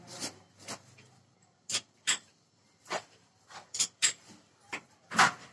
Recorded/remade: remade